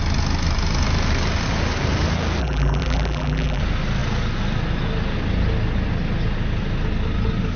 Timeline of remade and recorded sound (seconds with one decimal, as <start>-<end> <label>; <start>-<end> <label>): 0.0-2.4 recorded; 2.4-3.6 remade; 3.6-7.6 recorded